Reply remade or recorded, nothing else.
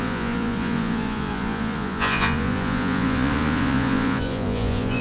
remade